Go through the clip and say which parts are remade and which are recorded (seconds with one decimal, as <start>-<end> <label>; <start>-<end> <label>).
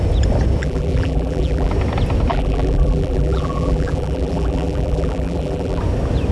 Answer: 0.0-0.6 recorded; 0.6-1.7 remade; 1.7-2.3 recorded; 2.3-5.8 remade; 5.8-6.3 recorded